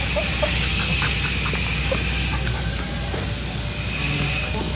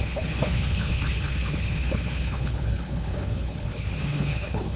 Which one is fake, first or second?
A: second